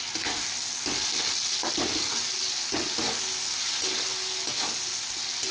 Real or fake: real